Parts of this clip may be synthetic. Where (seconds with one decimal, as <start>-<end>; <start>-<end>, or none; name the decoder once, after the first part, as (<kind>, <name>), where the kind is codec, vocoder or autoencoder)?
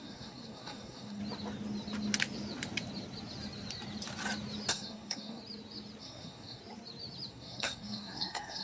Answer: 0.0-1.2 (codec, SNAC); 4.7-5.4; 6.0-6.6; 7.3-8.6